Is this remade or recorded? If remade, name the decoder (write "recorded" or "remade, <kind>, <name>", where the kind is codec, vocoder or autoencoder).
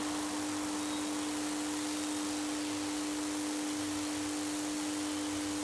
recorded